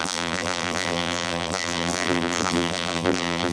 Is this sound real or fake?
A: fake